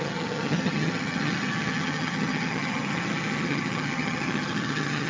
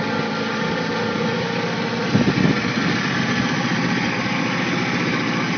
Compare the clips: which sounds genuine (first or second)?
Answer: second